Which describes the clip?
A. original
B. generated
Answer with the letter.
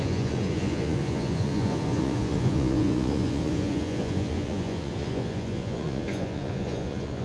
B